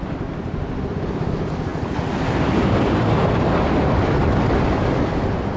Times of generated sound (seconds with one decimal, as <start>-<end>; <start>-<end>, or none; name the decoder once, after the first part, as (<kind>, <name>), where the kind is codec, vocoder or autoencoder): none